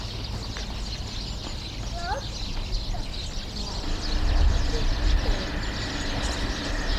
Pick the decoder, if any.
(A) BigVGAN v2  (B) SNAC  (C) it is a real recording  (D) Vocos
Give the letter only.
C